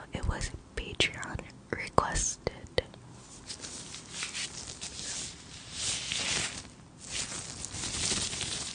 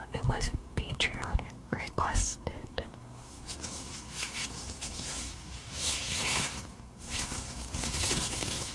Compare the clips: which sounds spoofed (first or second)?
second